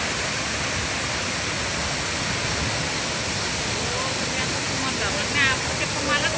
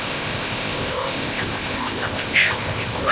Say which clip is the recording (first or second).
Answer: first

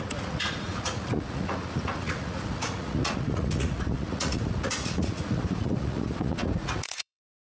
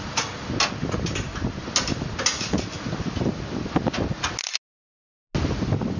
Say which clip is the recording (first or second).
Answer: second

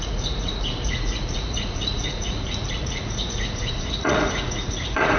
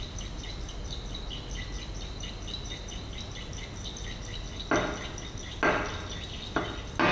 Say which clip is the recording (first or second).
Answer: second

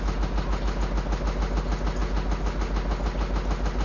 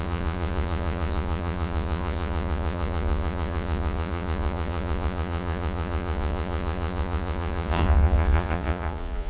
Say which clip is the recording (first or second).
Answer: first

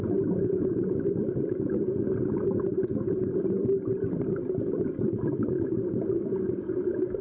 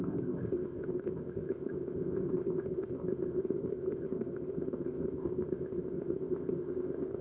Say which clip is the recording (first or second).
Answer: first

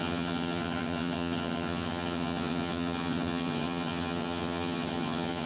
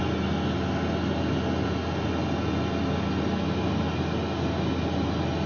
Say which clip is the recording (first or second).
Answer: second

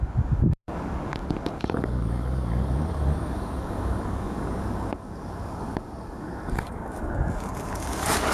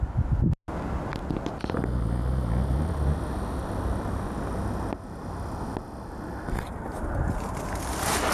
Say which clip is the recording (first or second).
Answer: second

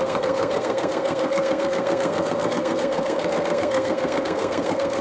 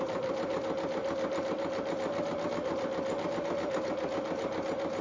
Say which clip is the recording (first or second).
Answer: second